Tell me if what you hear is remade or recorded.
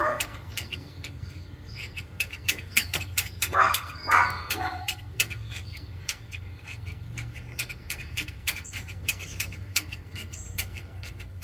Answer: remade